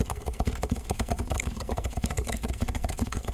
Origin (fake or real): fake